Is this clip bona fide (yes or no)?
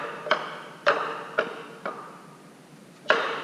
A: yes